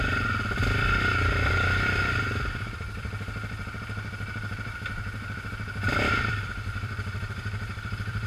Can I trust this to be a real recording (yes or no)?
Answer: no